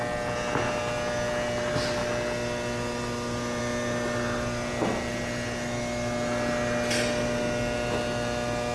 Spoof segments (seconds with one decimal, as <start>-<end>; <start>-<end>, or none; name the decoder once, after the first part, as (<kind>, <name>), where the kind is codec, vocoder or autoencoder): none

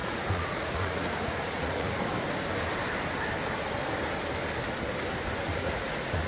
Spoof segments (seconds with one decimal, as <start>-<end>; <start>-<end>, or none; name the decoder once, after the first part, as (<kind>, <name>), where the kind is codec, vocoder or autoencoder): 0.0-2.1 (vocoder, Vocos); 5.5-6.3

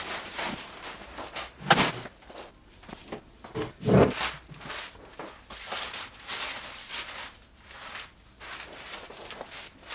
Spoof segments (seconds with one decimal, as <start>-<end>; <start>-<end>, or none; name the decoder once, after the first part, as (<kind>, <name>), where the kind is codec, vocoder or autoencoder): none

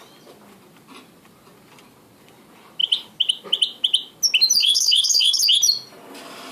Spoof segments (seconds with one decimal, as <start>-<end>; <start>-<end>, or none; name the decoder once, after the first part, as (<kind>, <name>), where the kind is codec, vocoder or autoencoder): 4.6-5.4 (codec, SNAC)